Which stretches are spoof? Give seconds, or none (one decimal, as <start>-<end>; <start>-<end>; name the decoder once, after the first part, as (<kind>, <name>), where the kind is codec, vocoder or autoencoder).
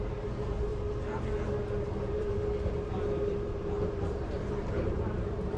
0.0-0.7 (vocoder, BigVGAN v2); 1.8-5.6